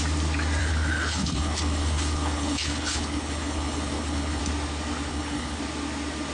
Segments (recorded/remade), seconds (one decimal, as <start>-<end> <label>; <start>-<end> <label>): 0.0-0.6 recorded; 0.6-4.4 remade; 4.4-5.1 recorded; 5.1-5.6 remade; 5.6-6.3 recorded

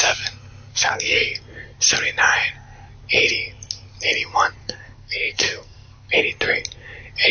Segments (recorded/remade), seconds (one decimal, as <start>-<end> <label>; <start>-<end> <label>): 0.0-0.7 recorded; 0.7-1.4 remade; 1.4-4.6 recorded; 4.6-6.1 remade; 6.1-7.3 recorded